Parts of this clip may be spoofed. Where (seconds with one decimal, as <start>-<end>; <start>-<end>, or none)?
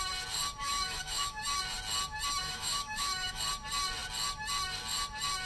0.6-1.4; 2.4-3.4